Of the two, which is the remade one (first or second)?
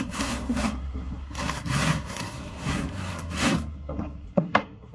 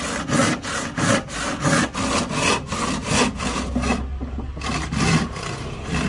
first